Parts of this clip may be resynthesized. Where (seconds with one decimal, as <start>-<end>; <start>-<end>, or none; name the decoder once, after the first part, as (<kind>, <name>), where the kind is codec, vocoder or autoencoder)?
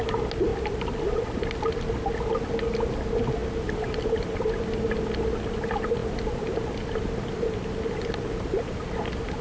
none